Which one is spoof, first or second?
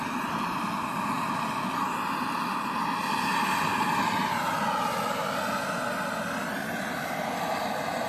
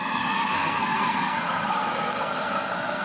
second